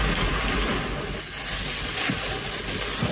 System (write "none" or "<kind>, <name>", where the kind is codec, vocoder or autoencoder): none